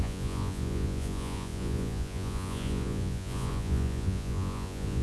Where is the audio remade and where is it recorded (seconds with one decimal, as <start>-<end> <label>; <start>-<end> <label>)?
0.0-5.0 remade